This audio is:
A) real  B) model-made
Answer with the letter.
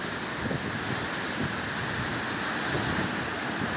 A